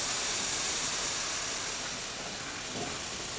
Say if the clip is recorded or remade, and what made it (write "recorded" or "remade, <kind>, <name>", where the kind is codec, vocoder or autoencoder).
recorded